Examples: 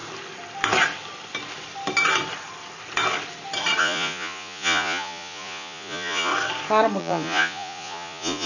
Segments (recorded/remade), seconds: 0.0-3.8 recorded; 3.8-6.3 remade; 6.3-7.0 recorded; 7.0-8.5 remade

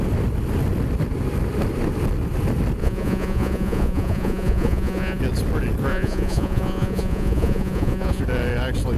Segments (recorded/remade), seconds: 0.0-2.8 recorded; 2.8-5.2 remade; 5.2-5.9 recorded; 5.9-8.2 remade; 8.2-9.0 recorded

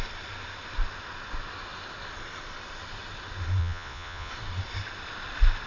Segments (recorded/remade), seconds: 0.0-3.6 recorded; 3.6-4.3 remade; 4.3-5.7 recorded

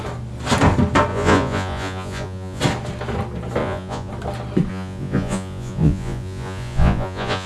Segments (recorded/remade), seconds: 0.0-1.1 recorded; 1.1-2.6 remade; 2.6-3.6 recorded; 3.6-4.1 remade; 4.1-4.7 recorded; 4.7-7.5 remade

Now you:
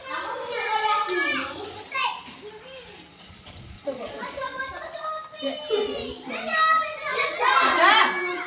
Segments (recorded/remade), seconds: 0.0-3.1 recorded; 3.1-4.6 remade; 4.6-7.1 recorded; 7.1-7.8 remade; 7.8-8.5 recorded

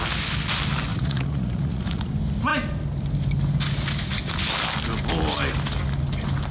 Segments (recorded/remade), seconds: 0.0-0.9 recorded; 0.9-2.1 remade; 2.1-6.5 recorded

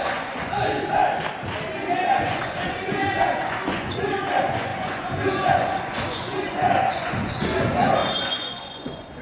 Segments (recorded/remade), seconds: 0.0-1.0 remade; 1.0-1.7 recorded; 1.7-9.2 remade